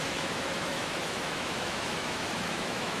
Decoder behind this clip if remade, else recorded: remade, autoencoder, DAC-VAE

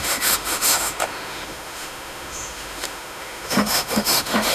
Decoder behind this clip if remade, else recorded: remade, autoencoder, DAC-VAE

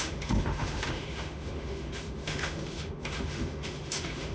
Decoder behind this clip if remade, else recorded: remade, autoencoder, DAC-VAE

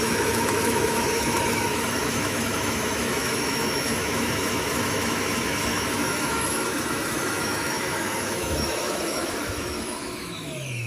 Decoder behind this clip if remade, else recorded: remade, autoencoder, DAC-VAE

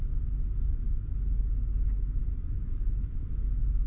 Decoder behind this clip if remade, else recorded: recorded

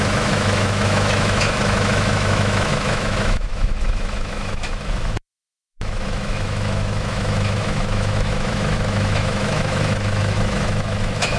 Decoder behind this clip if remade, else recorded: remade, autoencoder, DAC-VAE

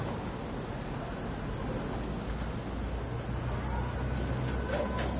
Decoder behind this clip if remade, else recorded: recorded